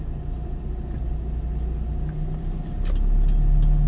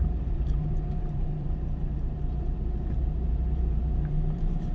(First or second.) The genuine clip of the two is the first